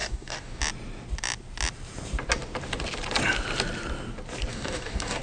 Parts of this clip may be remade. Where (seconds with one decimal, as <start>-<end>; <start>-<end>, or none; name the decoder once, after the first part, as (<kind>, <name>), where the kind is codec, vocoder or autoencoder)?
0.0-0.6 (codec, DAC); 4.5-5.2